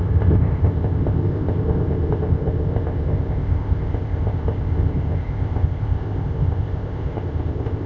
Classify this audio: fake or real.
fake